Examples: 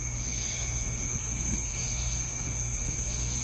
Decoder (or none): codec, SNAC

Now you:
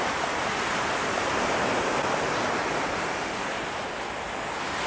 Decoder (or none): none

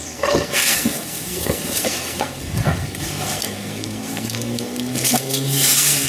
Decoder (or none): codec, SNAC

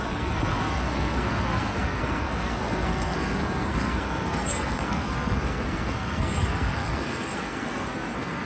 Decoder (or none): codec, SNAC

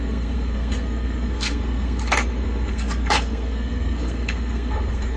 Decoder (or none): codec, SNAC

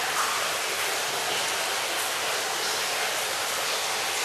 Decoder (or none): none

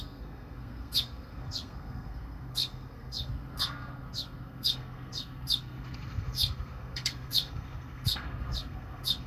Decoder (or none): codec, SNAC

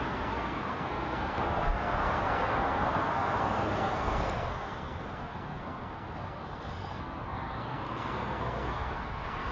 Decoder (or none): codec, SNAC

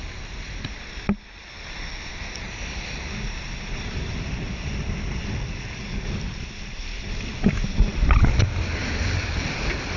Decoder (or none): none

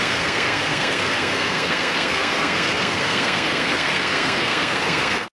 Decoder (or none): codec, SNAC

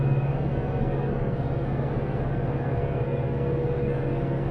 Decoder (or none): codec, SNAC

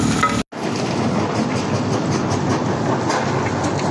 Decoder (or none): none